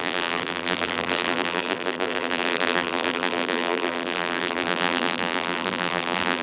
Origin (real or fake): fake